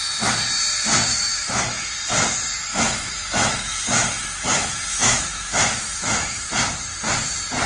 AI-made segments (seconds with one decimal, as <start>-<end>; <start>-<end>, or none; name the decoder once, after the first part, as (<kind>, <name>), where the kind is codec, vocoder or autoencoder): 1.1-1.9 (autoencoder, DAC-VAE); 2.7-6.5